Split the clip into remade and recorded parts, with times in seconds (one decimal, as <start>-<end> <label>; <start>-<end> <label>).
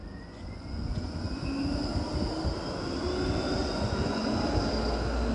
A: 0.0-1.3 remade; 1.3-3.6 recorded; 3.6-4.4 remade; 4.4-5.3 recorded